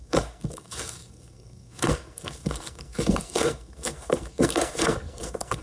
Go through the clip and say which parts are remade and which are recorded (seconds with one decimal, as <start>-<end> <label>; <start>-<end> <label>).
0.0-5.6 remade